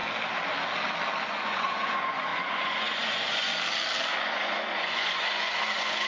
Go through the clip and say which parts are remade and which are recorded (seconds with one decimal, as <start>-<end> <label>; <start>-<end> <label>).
0.0-1.2 recorded; 1.2-3.5 remade; 3.5-4.3 recorded; 4.3-6.1 remade